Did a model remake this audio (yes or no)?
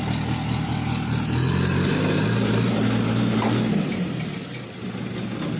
no